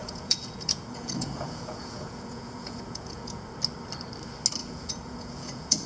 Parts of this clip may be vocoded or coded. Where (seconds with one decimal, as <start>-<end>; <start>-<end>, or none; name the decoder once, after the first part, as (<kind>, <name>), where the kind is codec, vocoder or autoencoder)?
0.0-3.4 (vocoder, Vocos); 4.6-5.9